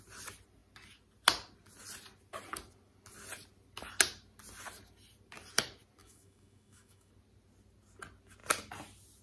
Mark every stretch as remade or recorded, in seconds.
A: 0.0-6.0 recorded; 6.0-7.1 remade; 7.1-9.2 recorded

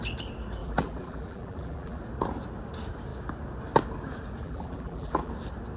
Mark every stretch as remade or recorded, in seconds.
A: 0.0-0.6 recorded; 0.6-2.0 remade; 2.0-4.4 recorded; 4.4-5.3 remade; 5.3-5.8 recorded

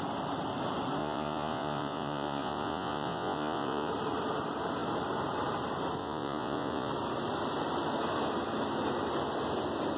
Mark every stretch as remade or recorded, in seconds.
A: 0.0-1.0 recorded; 1.0-3.9 remade; 3.9-6.0 recorded; 6.0-6.9 remade; 6.9-10.0 recorded

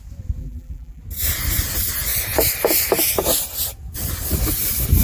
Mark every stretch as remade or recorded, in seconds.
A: 0.0-0.4 recorded; 0.4-1.0 remade; 1.0-5.0 recorded

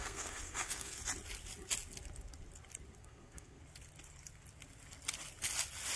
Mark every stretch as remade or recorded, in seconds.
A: 0.0-1.0 remade; 1.0-3.0 recorded; 3.0-3.6 remade; 3.6-6.0 recorded

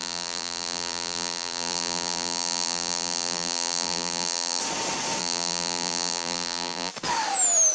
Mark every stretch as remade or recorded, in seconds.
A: 0.0-4.6 remade; 4.6-5.2 recorded; 5.2-6.9 remade; 6.9-7.7 recorded

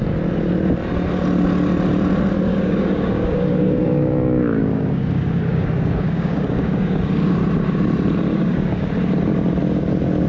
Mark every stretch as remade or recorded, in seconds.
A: 0.0-2.5 recorded; 2.5-7.3 remade; 7.3-8.3 recorded; 8.3-8.9 remade; 8.9-10.3 recorded